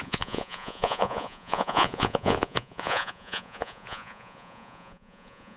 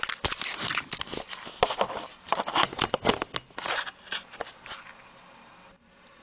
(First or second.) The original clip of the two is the second